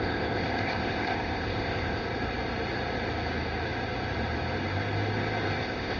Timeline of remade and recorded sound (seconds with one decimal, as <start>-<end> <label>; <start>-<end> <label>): 0.0-2.0 remade; 2.0-5.6 recorded; 5.6-6.0 remade